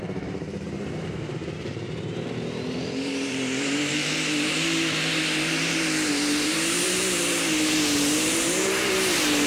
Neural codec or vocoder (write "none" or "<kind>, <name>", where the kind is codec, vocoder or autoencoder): vocoder, BigVGAN v2